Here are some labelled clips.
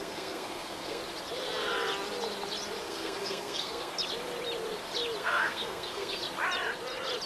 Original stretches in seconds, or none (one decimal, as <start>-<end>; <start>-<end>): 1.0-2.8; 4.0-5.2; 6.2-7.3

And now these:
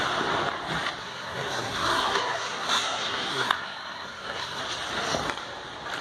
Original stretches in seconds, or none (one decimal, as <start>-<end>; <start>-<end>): 0.0-1.0; 4.6-6.0

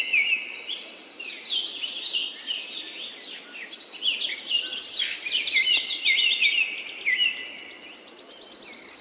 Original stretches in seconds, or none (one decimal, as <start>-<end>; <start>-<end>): 0.0-9.0

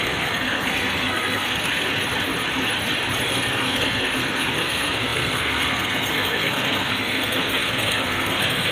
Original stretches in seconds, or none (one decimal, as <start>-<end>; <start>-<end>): 1.9-3.3

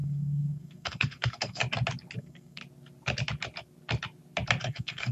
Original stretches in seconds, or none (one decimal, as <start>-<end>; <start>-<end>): 1.6-2.2; 2.6-4.6

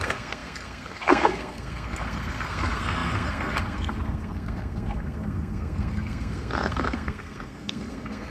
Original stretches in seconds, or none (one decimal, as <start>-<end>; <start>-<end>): none

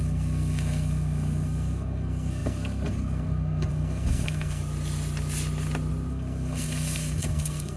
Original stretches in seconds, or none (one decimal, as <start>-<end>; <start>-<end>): 4.6-6.1

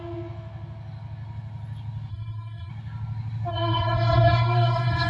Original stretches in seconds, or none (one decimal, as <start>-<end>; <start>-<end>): 0.0-2.1; 2.7-3.5